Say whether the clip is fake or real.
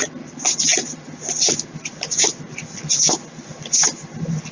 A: real